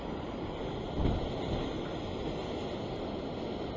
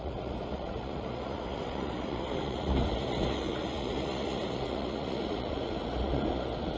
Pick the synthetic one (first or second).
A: second